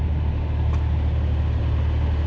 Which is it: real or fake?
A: real